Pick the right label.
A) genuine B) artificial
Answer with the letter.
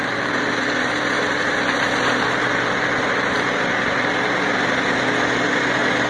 A